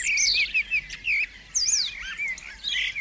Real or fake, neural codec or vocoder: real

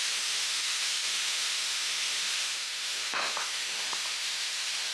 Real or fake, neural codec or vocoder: fake, autoencoder, DAC-VAE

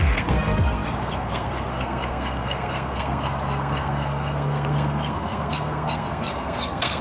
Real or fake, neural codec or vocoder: fake, codec, SNAC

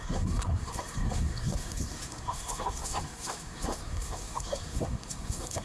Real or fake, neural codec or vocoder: fake, codec, SNAC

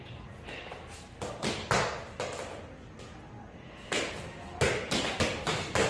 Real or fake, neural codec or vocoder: real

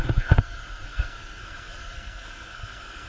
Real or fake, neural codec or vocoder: fake, codec, SNAC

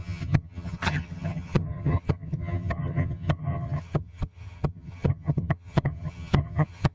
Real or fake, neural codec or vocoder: fake, vocoder, HiFi-GAN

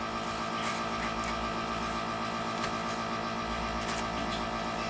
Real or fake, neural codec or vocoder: real